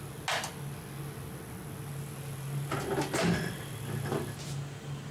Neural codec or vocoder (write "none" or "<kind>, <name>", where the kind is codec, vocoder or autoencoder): none